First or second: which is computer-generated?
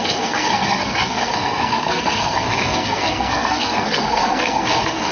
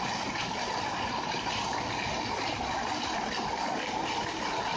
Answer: first